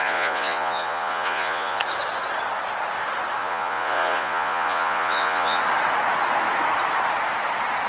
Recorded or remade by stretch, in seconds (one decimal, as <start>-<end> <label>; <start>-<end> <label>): 0.0-1.8 remade; 1.8-3.4 recorded; 3.4-5.6 remade; 5.6-7.9 recorded

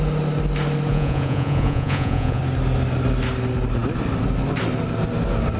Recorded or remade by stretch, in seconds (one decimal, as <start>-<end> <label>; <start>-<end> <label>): 0.0-0.9 recorded; 0.9-2.4 remade; 2.4-5.6 recorded

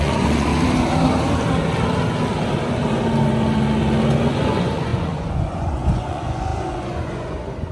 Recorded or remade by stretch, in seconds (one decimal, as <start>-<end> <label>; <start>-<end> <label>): 0.0-0.5 remade; 0.5-4.3 recorded; 4.3-7.7 remade

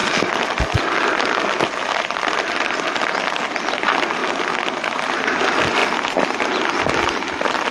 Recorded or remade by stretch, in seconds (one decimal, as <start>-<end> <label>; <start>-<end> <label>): 0.0-7.7 recorded

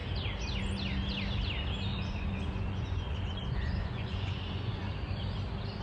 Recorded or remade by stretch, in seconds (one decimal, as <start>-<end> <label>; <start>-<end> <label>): 0.0-1.9 recorded; 1.9-4.9 remade; 4.9-5.8 recorded

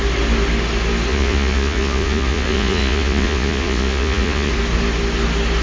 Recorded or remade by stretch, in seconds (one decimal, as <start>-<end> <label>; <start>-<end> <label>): 0.0-1.1 recorded; 1.1-4.5 remade; 4.5-5.6 recorded